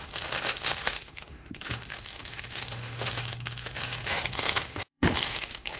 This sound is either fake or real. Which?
fake